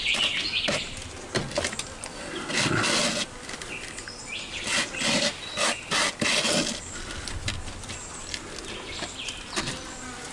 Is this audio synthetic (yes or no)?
no